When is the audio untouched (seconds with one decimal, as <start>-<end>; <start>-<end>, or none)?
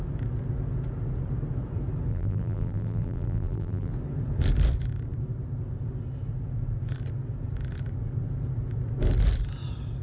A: 0.0-2.1; 3.9-10.0